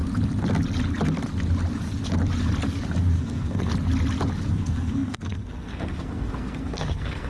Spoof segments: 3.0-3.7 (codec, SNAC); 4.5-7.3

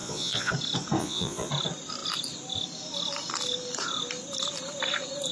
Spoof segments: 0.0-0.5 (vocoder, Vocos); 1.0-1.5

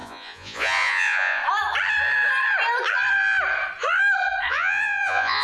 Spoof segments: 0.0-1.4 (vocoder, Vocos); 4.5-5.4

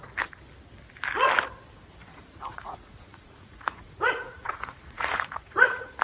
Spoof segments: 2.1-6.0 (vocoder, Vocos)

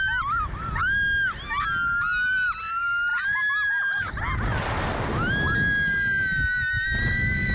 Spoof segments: none

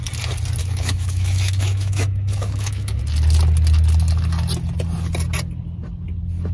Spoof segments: 0.6-3.0 (autoencoder, DAC-VAE)

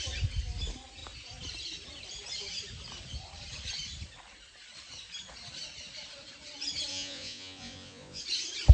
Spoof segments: 6.9-8.2 (vocoder, Vocos)

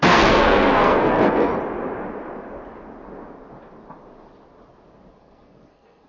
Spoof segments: 0.0-1.5 (codec, SNAC); 5.2-6.1